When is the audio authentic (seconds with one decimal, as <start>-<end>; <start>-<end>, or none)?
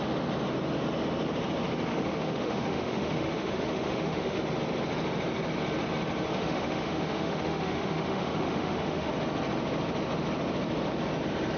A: 0.0-1.9; 4.4-6.3; 9.1-11.6